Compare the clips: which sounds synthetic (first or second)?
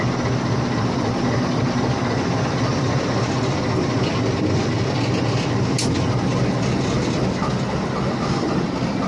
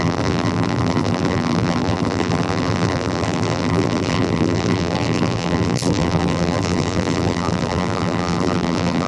second